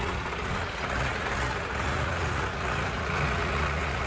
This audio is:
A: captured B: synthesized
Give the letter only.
B